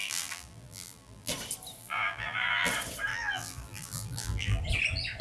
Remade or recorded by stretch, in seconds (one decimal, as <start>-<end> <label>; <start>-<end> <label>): 0.0-1.3 remade; 1.3-1.8 recorded; 1.8-2.7 remade; 2.7-3.1 recorded; 3.1-4.6 remade; 4.6-5.2 recorded